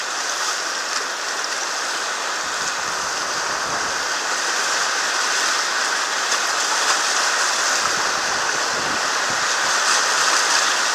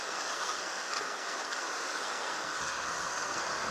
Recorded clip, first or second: first